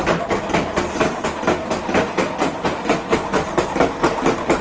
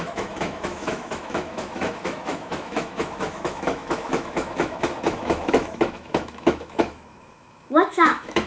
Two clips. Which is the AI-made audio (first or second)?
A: second